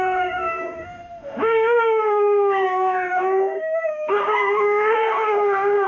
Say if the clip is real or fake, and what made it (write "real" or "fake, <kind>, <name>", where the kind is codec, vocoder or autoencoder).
fake, autoencoder, DAC-VAE